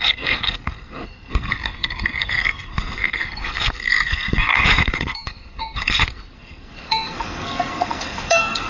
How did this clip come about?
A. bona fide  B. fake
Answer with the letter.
B